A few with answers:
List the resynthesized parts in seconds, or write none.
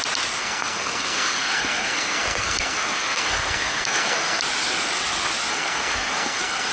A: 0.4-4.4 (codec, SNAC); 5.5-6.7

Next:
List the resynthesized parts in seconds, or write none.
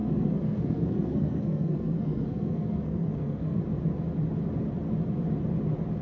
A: 0.0-3.6 (codec, SNAC)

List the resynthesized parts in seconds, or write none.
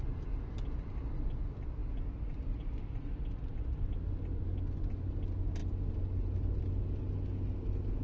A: none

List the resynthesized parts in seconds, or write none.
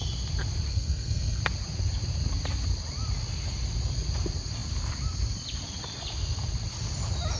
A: 0.7-1.4 (codec, SNAC)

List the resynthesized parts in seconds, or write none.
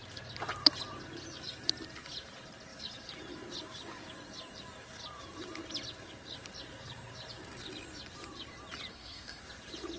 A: 8.9-9.4 (codec, SNAC)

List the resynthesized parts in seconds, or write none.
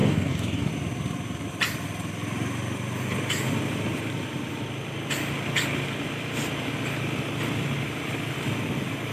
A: 0.0-0.7 (codec, DAC)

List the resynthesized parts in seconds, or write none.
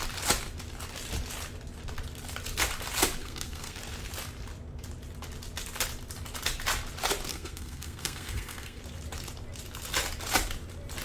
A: 3.2-3.8 (codec, SNAC); 7.3-8.8